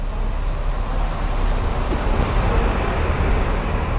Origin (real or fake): real